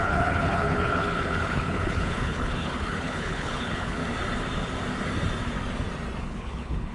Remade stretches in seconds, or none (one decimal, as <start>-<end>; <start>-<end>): 0.0-4.0; 6.2-6.9